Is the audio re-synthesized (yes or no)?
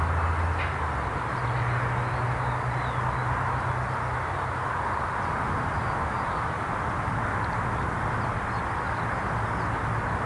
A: no